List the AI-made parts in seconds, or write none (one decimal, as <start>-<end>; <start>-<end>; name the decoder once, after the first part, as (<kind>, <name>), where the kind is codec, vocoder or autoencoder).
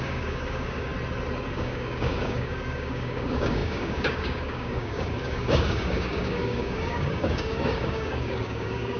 0.0-0.9 (codec, DAC); 1.5-9.0